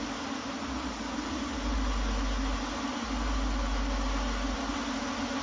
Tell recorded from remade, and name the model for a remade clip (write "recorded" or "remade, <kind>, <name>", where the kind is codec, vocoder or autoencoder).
recorded